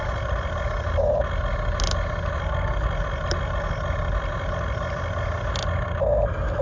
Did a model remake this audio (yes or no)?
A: no